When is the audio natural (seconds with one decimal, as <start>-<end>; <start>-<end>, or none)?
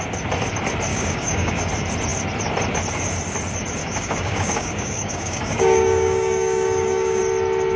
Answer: 0.0-0.9; 1.7-3.8; 7.2-7.8